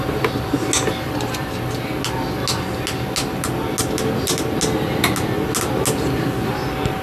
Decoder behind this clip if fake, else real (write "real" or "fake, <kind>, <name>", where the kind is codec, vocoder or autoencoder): real